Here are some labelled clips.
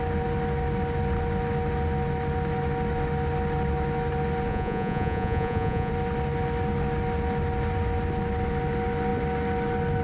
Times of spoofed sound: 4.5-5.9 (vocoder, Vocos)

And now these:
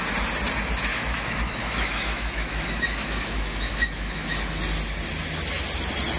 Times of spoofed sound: 0.9-4.6 (autoencoder, DAC-VAE)